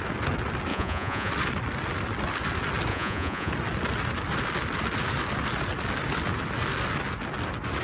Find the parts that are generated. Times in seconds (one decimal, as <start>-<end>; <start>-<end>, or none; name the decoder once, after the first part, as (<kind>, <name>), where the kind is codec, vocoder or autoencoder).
0.7-1.3 (vocoder, Vocos); 2.9-3.5